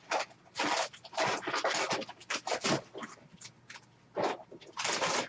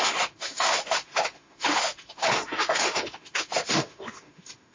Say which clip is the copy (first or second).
second